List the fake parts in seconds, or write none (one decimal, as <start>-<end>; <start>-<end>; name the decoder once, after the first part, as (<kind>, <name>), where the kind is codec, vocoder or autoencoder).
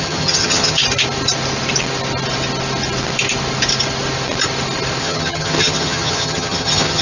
0.0-0.8 (vocoder, HiFi-GAN); 5.0-7.0